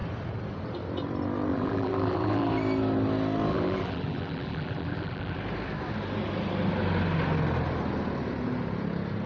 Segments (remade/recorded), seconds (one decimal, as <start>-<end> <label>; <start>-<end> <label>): 0.0-1.5 recorded; 1.5-2.5 remade; 2.5-3.5 recorded; 3.5-5.4 remade; 5.4-9.3 recorded

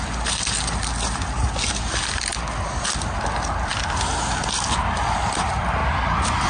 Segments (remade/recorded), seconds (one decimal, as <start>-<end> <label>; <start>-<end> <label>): 0.0-6.5 recorded

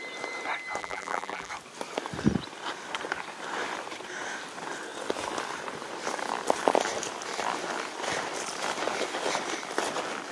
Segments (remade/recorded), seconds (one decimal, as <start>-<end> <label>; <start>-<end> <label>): 0.0-0.8 recorded; 0.8-1.5 remade; 1.5-10.3 recorded

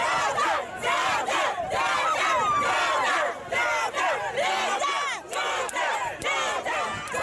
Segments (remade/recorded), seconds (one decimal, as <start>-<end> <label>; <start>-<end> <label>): 0.0-1.0 recorded; 1.0-1.5 remade; 1.5-7.2 recorded

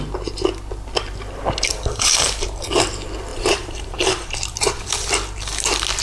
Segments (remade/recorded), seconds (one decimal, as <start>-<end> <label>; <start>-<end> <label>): 0.0-1.7 recorded; 1.7-2.2 remade; 2.2-3.3 recorded; 3.3-5.1 remade; 5.1-6.0 recorded